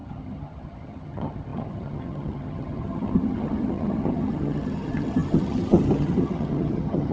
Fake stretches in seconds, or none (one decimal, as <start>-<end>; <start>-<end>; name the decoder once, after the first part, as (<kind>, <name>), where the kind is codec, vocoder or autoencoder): 0.0-7.1 (vocoder, HiFi-GAN)